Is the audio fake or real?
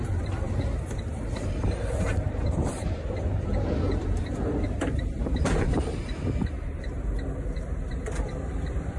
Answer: fake